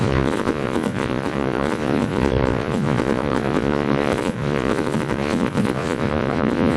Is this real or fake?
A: fake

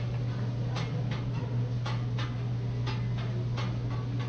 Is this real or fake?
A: real